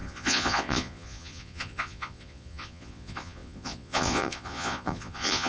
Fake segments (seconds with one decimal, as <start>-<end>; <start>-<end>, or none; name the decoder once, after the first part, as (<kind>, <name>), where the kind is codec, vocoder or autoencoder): 0.0-5.5 (vocoder, Vocos)